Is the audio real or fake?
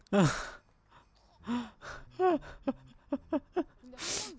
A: real